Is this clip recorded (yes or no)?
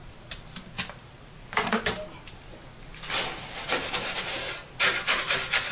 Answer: yes